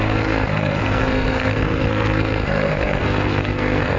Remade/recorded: remade